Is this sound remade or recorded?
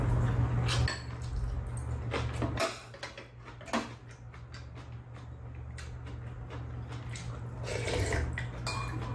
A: recorded